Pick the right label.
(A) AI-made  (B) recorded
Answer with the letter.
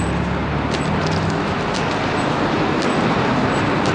B